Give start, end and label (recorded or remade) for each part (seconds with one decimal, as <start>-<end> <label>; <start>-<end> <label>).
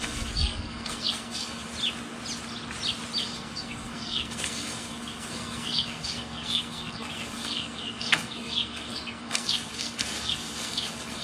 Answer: 0.0-1.7 remade; 1.7-3.2 recorded; 3.2-11.2 remade